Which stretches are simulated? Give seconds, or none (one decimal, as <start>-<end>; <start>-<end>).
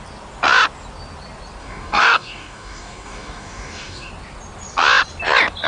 1.6-4.1